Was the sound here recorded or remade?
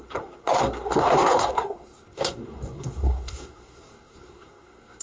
remade